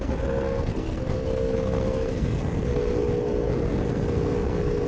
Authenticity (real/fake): fake